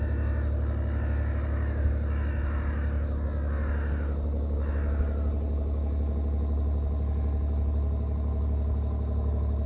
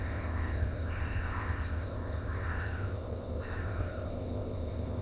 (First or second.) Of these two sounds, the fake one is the second